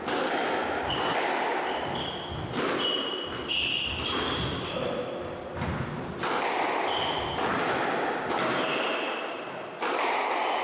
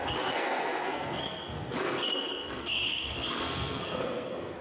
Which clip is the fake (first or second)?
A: second